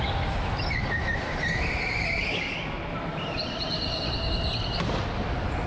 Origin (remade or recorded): recorded